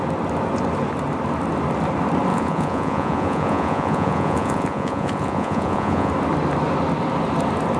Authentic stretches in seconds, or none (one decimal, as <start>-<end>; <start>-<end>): 0.0-2.3; 6.1-7.8